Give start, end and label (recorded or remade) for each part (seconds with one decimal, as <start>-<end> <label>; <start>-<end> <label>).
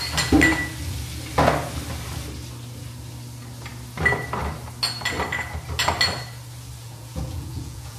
0.0-6.8 recorded; 6.8-8.0 remade